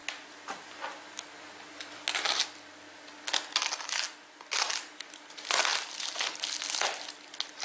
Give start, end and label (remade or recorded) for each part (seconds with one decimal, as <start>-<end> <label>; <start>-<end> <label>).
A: 0.0-7.6 recorded